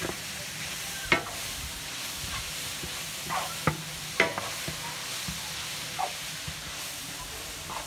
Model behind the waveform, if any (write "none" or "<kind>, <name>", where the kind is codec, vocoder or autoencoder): none